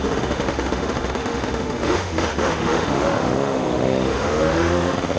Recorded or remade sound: remade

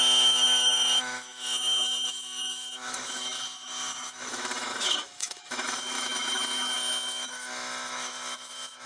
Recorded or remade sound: remade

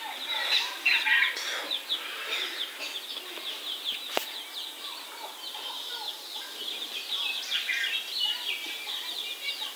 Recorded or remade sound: recorded